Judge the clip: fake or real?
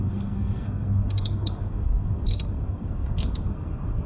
fake